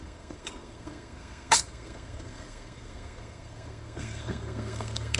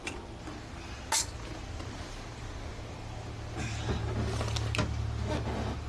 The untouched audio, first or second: second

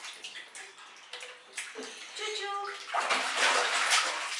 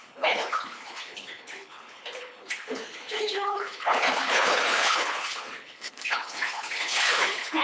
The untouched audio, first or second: first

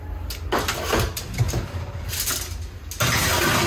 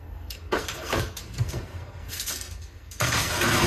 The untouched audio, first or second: first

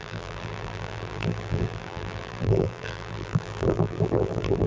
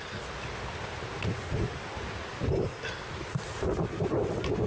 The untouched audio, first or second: second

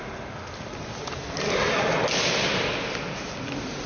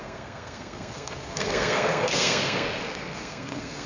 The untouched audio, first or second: first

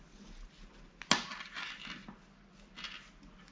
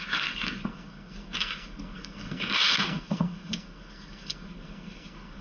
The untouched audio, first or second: first